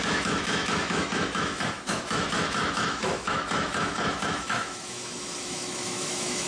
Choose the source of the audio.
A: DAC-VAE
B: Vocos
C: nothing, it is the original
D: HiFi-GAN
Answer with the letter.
A